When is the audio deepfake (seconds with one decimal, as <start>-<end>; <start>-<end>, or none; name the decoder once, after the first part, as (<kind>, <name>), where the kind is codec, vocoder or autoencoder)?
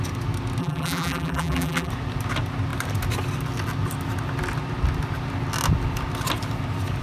0.6-1.9 (vocoder, BigVGAN v2)